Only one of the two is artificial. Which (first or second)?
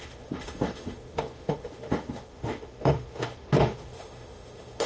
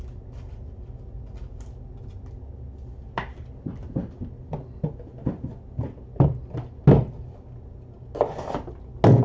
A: first